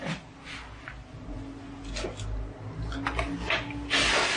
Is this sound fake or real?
real